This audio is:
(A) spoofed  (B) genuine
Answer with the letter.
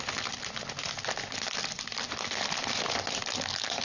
B